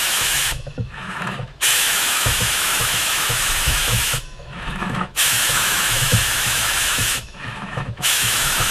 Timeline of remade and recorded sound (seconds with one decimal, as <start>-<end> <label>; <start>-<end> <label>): 0.0-8.7 remade